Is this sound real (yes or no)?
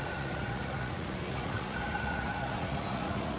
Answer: no